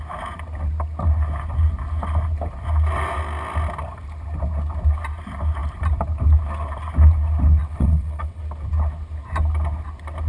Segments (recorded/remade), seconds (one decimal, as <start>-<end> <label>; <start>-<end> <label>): 0.0-7.6 recorded; 7.6-8.4 remade; 8.4-10.3 recorded